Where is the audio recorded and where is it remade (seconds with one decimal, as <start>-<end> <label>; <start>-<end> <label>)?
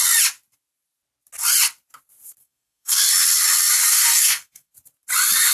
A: 0.0-2.4 recorded; 2.4-3.0 remade; 3.0-3.9 recorded; 3.9-4.7 remade; 4.7-5.5 recorded